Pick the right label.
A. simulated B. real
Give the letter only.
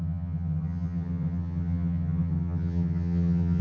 A